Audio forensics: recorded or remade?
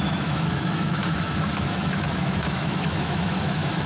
remade